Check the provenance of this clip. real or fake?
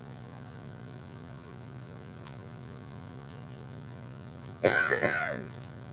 fake